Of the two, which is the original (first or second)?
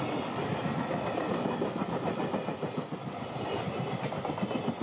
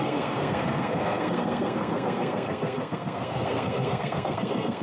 first